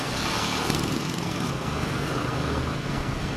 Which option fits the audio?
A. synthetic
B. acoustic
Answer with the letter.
A